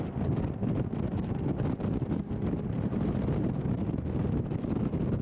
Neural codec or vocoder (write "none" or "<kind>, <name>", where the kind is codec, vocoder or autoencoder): none